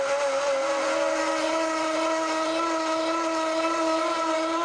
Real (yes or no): yes